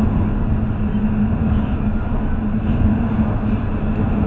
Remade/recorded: recorded